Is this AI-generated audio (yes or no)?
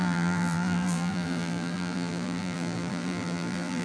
yes